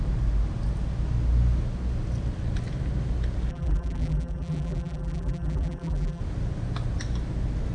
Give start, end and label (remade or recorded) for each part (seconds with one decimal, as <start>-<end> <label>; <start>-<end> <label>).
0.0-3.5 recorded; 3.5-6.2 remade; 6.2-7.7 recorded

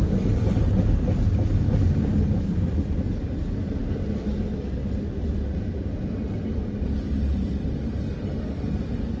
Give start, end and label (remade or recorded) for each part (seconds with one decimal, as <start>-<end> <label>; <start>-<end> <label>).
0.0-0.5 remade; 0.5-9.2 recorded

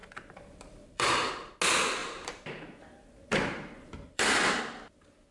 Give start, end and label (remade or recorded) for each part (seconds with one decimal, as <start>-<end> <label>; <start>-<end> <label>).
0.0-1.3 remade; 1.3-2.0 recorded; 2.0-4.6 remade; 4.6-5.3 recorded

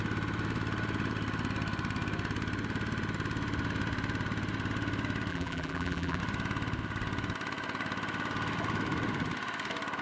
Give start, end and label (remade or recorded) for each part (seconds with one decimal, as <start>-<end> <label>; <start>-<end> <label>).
0.0-5.3 recorded; 5.3-6.2 remade; 6.2-10.0 recorded